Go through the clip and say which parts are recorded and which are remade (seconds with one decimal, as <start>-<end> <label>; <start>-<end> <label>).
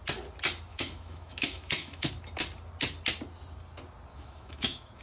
0.0-0.7 recorded; 0.7-2.1 remade; 2.1-4.1 recorded; 4.1-5.0 remade